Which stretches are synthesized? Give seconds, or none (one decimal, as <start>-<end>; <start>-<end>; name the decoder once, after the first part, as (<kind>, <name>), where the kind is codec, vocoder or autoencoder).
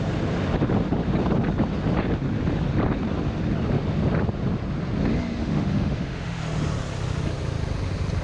5.4-6.4 (autoencoder, DAC-VAE)